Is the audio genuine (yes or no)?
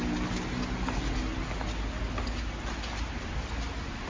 yes